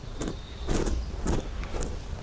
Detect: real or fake real